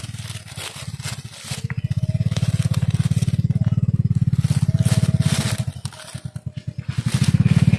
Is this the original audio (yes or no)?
yes